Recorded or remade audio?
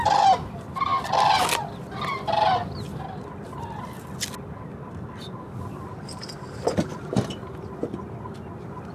recorded